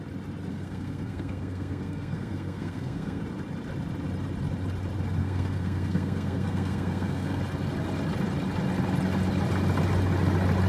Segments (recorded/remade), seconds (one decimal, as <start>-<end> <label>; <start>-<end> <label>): 0.0-0.5 recorded; 0.5-3.2 remade; 3.2-5.2 recorded; 5.2-7.4 remade; 7.4-10.7 recorded